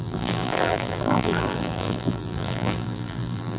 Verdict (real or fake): fake